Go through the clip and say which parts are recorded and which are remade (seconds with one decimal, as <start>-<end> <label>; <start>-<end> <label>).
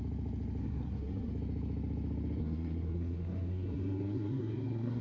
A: 0.0-0.6 recorded; 0.6-1.3 remade; 1.3-2.4 recorded; 2.4-5.0 remade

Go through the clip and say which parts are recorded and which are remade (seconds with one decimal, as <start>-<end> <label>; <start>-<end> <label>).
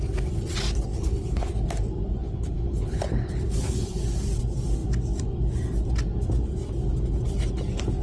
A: 0.0-0.9 recorded; 0.9-1.5 remade; 1.5-2.2 recorded; 2.2-4.0 remade; 4.0-8.0 recorded